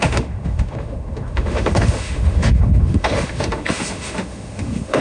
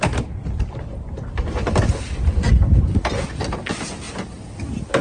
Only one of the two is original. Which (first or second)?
second